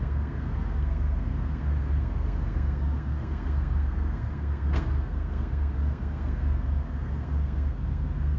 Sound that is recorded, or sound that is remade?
remade